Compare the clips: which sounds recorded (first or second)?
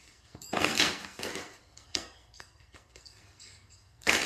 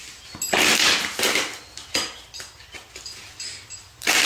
second